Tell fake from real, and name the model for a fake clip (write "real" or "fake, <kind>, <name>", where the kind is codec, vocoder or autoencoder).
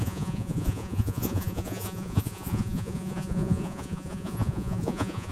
fake, vocoder, Vocos